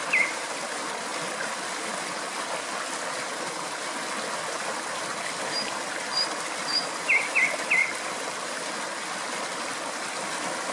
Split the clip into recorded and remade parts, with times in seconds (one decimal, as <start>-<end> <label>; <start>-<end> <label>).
0.0-1.1 recorded; 1.1-2.4 remade; 2.4-7.8 recorded; 7.8-9.8 remade; 9.8-10.7 recorded